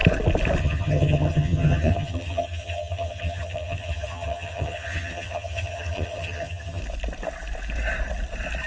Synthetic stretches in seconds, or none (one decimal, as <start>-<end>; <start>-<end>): 0.6-6.8